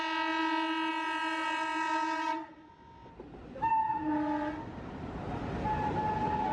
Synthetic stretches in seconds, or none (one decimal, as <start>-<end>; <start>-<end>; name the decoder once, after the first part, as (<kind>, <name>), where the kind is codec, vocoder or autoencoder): none